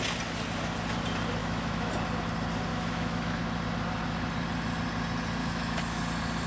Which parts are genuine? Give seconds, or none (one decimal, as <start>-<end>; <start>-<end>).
0.0-1.4; 1.9-2.7; 3.4-5.4; 6.0-6.5